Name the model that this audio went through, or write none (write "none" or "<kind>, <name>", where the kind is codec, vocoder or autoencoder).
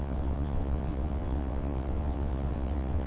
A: vocoder, WaveNeXt